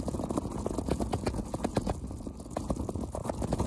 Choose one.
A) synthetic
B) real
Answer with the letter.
A